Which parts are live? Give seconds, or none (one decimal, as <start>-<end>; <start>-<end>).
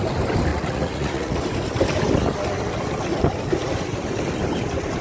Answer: 0.0-0.5; 1.4-5.0